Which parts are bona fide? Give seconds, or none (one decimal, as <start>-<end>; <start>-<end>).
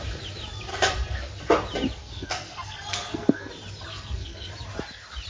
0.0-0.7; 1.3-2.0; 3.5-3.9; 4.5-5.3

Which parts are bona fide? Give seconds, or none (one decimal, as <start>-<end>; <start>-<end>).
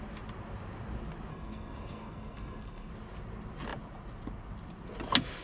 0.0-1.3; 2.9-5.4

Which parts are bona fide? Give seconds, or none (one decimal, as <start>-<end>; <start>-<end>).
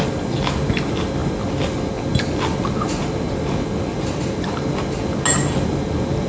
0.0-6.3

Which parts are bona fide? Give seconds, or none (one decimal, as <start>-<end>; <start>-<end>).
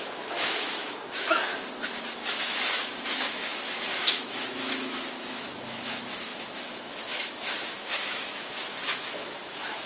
1.5-2.4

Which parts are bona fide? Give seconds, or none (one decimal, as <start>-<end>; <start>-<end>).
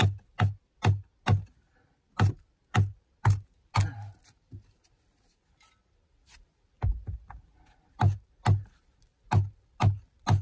0.0-10.4